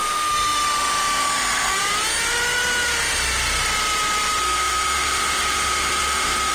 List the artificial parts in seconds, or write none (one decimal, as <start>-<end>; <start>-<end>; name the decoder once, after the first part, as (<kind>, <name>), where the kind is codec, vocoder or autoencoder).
0.0-1.7 (autoencoder, DAC-VAE); 4.4-6.5

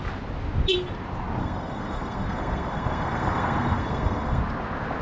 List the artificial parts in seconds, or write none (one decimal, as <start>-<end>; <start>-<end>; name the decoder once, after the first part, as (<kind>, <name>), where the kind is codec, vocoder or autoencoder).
1.4-4.4 (codec, SNAC)

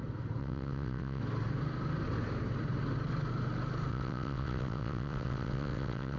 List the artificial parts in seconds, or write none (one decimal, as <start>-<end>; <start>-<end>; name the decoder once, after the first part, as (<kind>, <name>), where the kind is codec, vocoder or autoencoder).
0.4-1.2 (vocoder, WaveNeXt); 3.9-6.2

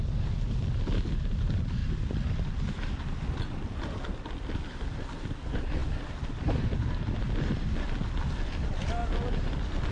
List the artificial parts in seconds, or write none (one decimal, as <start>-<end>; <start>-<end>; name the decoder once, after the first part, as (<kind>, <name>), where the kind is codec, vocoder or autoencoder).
none

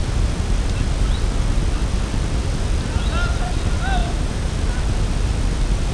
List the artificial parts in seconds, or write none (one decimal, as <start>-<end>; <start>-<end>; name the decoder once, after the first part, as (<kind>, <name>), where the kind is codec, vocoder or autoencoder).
4.0-4.5 (vocoder, BigVGAN v2)

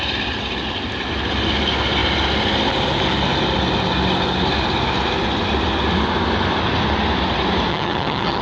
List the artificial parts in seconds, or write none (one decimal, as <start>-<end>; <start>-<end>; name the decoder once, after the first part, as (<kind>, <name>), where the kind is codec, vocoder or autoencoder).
7.7-8.4 (vocoder, HiFi-GAN)

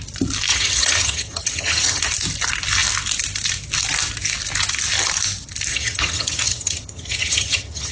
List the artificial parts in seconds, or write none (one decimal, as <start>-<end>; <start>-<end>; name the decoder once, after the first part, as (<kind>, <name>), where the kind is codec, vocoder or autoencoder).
0.5-2.1 (vocoder, HiFi-GAN); 5.7-7.9

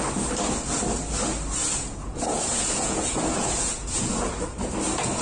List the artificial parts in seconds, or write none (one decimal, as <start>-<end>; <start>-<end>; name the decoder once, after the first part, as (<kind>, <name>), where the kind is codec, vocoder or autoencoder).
1.6-4.7 (vocoder, Vocos)